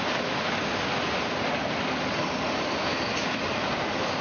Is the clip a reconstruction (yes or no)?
no